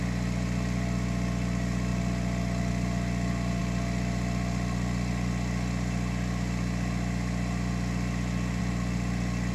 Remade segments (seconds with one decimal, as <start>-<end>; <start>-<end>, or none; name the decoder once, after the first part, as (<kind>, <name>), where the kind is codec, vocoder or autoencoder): none